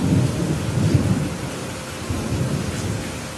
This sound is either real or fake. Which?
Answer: real